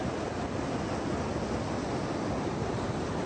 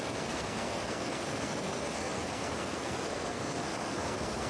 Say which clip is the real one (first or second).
first